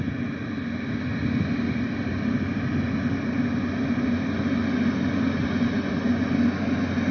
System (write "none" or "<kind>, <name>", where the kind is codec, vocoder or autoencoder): none